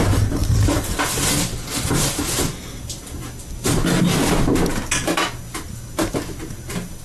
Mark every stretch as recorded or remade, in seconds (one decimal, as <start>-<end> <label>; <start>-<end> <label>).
0.0-7.0 recorded